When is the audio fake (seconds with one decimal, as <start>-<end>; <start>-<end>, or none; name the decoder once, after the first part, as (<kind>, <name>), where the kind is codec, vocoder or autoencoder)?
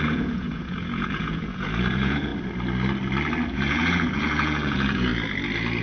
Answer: 0.0-2.3 (vocoder, Vocos); 3.5-5.1